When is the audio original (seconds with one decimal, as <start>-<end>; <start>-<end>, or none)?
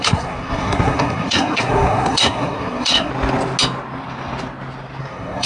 3.1-5.0